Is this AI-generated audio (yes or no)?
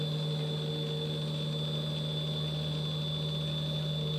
no